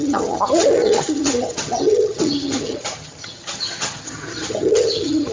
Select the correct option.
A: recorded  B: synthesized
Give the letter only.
B